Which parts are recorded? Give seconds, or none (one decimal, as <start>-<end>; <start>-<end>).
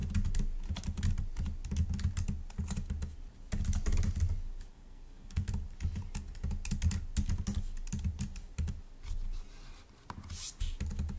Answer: 0.0-4.7; 5.5-11.2